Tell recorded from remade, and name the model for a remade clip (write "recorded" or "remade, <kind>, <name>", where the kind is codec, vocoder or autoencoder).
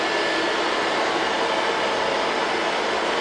recorded